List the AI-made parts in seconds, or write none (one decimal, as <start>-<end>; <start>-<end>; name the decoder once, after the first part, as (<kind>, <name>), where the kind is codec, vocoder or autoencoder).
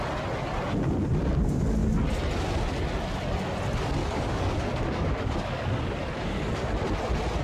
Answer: 4.0-6.5 (codec, DAC)